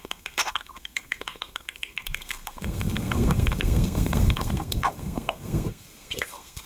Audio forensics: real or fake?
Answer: fake